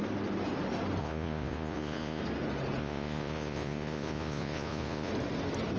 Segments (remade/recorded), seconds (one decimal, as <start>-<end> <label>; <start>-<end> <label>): 0.0-1.0 recorded; 1.0-2.2 remade; 2.2-2.8 recorded; 2.8-5.1 remade; 5.1-5.8 recorded